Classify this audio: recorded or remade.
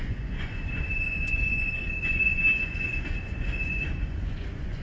remade